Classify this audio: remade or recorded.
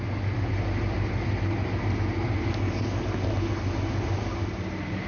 recorded